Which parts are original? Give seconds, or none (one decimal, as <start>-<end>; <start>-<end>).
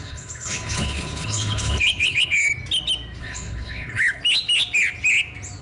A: 2.5-3.2; 4.2-5.6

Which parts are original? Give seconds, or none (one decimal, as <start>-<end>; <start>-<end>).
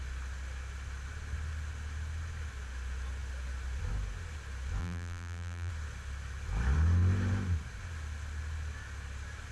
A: 0.0-4.8; 5.7-9.5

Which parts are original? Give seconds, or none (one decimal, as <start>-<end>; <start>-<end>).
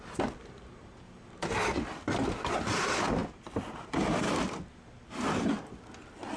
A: 0.0-6.4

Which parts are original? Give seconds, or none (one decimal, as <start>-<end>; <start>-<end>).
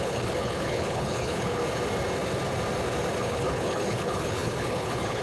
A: 1.6-3.2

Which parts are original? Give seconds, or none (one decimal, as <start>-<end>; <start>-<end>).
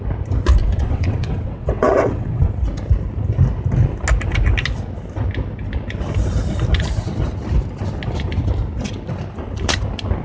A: 0.0-0.6; 2.5-10.2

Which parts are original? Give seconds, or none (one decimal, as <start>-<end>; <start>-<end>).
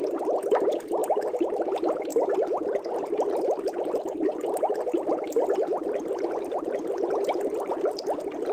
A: 0.0-8.5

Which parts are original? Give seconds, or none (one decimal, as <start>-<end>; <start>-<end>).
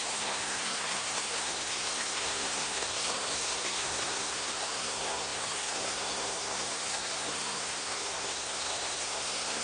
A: none